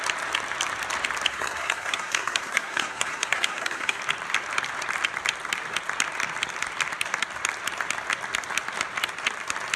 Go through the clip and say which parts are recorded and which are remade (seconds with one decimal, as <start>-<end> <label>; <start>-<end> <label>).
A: 0.0-1.3 recorded; 1.3-4.0 remade; 4.0-9.8 recorded